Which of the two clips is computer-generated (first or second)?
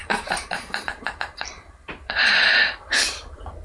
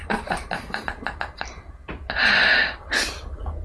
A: first